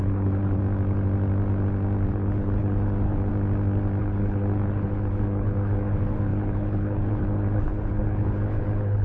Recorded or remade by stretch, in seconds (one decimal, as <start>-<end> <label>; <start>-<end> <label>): 0.0-0.6 remade; 0.6-2.1 recorded; 2.1-3.3 remade; 3.3-4.0 recorded; 4.0-9.0 remade